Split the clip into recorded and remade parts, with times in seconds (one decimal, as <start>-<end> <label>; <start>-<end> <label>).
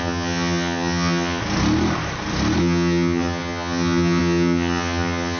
0.0-1.4 remade; 1.4-2.6 recorded; 2.6-5.4 remade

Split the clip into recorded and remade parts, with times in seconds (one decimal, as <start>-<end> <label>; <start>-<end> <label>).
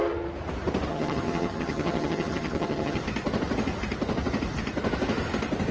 0.0-0.9 recorded; 0.9-3.0 remade; 3.0-5.7 recorded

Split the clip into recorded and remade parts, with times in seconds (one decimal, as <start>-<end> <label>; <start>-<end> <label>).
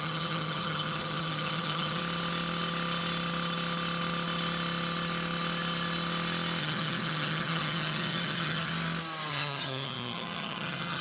0.0-2.0 remade; 2.0-6.6 recorded; 6.6-8.7 remade; 8.7-9.3 recorded; 9.3-11.0 remade